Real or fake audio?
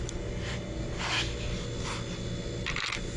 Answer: real